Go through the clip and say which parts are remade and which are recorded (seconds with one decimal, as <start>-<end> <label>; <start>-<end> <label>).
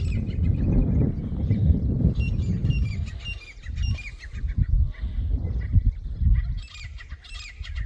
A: 0.0-7.9 recorded